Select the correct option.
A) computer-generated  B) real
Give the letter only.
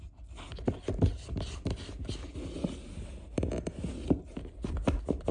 B